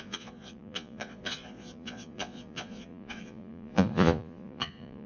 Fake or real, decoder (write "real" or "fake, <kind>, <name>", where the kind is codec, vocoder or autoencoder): fake, vocoder, Vocos